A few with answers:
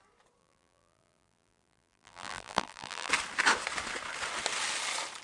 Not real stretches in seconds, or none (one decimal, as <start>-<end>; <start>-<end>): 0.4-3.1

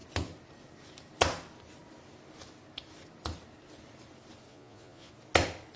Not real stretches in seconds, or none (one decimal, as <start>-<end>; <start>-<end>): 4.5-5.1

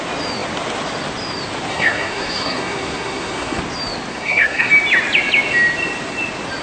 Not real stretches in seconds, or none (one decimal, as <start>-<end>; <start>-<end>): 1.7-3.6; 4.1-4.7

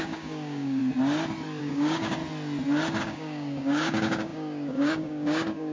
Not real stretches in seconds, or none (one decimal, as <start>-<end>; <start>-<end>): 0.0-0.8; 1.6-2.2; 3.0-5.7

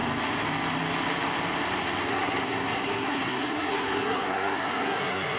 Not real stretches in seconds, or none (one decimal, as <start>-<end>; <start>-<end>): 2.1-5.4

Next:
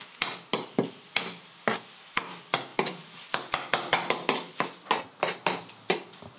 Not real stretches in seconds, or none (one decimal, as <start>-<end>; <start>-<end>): none

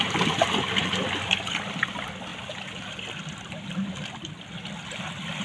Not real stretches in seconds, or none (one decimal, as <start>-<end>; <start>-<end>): none

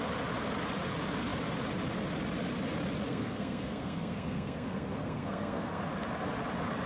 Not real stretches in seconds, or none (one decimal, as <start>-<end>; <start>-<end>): 3.1-5.8